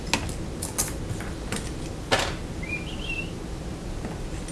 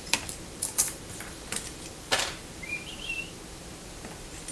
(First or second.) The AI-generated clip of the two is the second